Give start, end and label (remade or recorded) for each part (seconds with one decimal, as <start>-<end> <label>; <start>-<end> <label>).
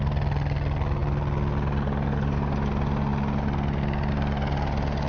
0.0-5.1 recorded